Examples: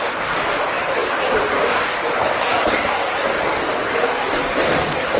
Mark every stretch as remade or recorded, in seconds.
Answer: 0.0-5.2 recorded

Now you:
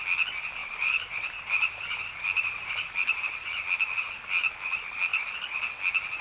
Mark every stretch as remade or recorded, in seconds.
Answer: 0.0-0.6 recorded; 0.6-3.2 remade; 3.2-5.1 recorded; 5.1-5.7 remade; 5.7-6.2 recorded

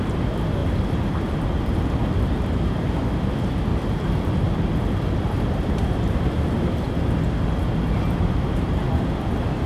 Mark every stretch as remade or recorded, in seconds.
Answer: 0.0-3.7 recorded; 3.7-7.0 remade; 7.0-9.7 recorded

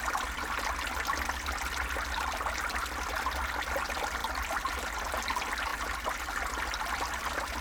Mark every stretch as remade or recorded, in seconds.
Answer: 0.0-7.6 recorded

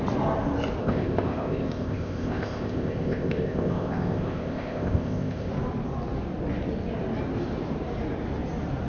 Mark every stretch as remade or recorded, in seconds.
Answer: 0.0-0.8 recorded; 0.8-5.5 remade; 5.5-8.9 recorded